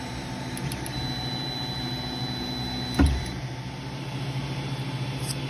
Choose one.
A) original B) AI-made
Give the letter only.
A